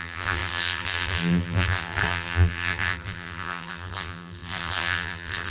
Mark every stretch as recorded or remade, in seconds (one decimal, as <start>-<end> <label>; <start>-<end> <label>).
0.0-5.5 remade